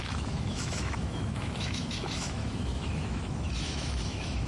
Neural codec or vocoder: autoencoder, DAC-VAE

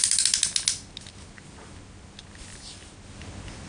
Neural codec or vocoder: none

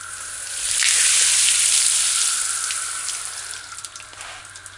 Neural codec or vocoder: none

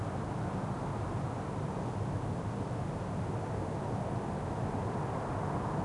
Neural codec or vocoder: none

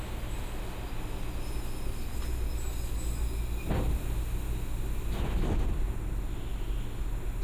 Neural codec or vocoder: none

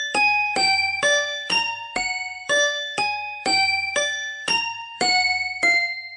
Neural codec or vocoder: autoencoder, DAC-VAE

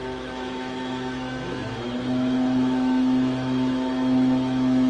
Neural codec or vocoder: autoencoder, DAC-VAE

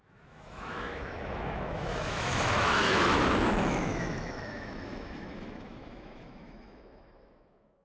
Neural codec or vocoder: autoencoder, DAC-VAE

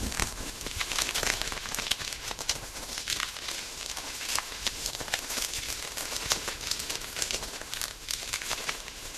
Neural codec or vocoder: autoencoder, DAC-VAE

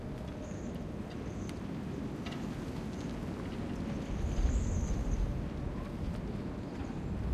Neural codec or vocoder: none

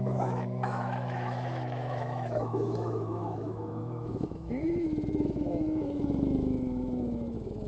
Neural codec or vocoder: autoencoder, DAC-VAE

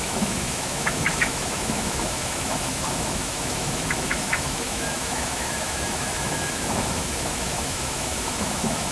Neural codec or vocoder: autoencoder, DAC-VAE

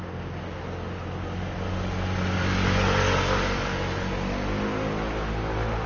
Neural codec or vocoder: none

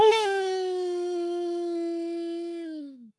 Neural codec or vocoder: autoencoder, DAC-VAE